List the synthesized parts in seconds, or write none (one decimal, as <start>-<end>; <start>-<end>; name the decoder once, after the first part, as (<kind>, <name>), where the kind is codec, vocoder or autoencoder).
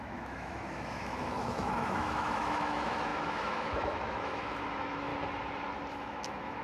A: 0.0-5.1 (autoencoder, DAC-VAE); 5.9-6.6